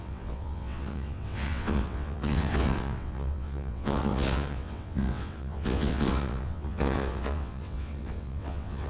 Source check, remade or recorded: remade